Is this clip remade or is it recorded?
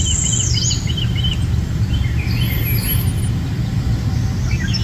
recorded